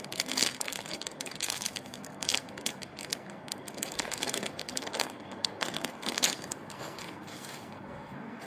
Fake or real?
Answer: fake